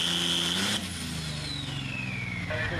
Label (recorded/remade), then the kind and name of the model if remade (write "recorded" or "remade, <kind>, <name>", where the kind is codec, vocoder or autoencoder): recorded